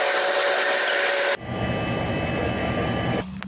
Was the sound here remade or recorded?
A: recorded